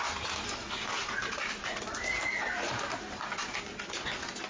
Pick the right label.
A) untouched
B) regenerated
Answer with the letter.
A